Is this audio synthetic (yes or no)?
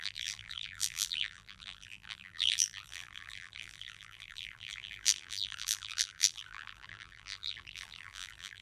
yes